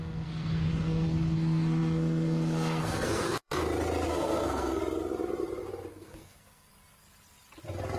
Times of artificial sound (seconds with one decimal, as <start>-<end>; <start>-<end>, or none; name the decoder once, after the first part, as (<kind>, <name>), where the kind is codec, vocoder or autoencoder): 0.0-3.6 (codec, SNAC); 4.1-4.8; 5.9-6.7